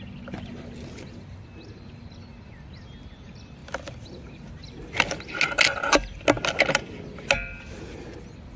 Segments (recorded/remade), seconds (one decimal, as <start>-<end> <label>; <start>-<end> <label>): 0.0-8.6 recorded